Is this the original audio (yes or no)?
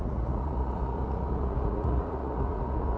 no